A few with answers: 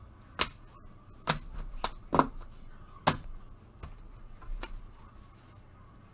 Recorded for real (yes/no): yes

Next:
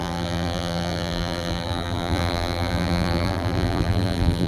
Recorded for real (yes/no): no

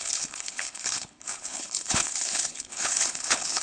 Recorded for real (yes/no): no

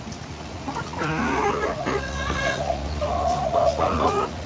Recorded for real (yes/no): no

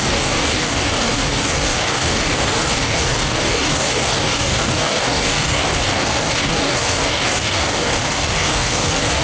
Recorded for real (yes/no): no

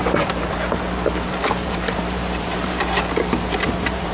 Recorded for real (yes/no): no